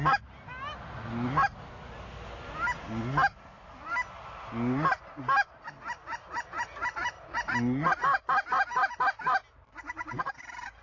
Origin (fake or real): real